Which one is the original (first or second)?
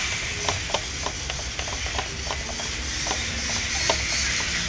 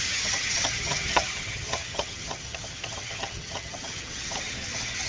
first